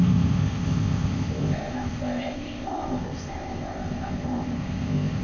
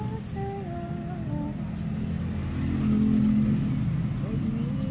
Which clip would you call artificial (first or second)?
first